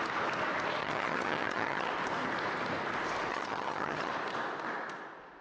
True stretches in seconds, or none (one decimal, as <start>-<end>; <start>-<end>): 0.0-0.8; 1.9-3.3; 4.1-5.4